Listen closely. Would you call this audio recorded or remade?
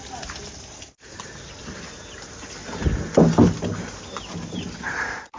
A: recorded